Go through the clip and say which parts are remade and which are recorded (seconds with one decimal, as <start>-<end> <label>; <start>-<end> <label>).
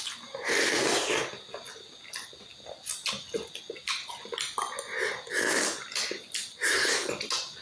0.0-7.6 recorded